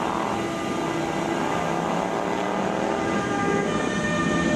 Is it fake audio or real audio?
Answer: real